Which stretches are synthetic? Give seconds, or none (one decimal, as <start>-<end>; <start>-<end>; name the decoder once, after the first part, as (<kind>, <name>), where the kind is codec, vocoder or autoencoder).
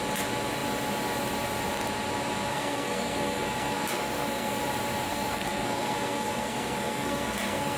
2.5-4.6 (codec, SNAC); 5.1-7.8